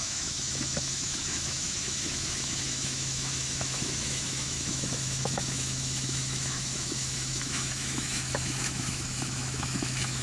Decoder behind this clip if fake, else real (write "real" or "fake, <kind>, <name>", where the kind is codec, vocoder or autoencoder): fake, autoencoder, DAC-VAE